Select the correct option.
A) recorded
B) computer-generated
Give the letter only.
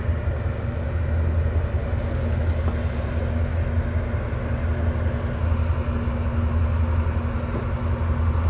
A